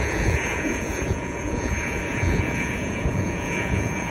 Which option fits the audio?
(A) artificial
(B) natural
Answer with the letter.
A